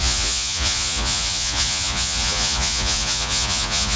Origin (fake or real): fake